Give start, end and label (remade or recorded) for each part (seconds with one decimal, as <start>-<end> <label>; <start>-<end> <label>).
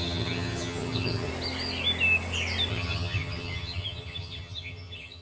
0.0-1.3 remade; 1.3-2.7 recorded; 2.7-5.2 remade